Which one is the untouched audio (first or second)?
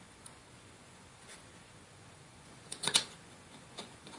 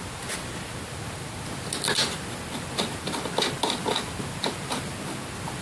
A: second